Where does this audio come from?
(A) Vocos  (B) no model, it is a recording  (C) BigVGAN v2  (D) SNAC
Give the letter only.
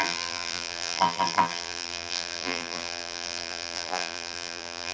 C